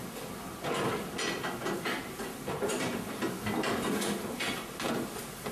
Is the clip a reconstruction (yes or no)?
no